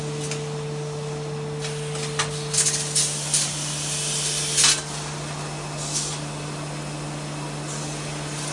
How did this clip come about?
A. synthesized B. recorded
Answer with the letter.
B